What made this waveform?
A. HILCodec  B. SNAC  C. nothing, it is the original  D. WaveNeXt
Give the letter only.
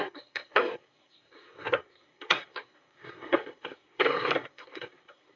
B